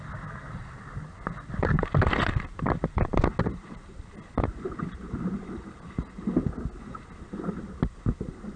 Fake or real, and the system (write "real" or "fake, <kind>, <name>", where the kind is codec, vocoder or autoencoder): real